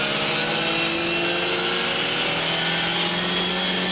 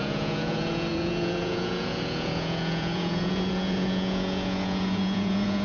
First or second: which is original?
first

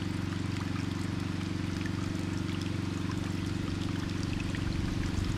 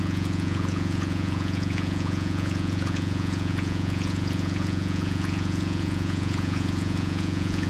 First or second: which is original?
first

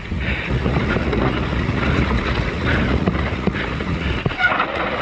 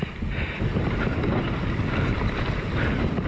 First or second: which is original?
second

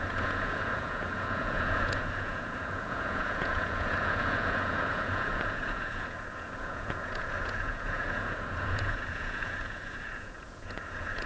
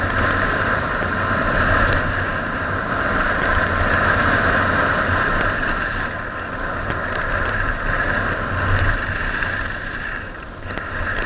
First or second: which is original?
second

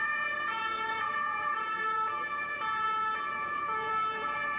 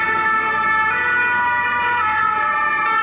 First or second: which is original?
second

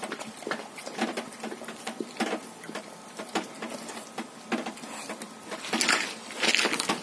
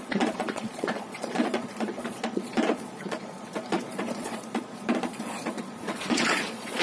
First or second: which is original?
first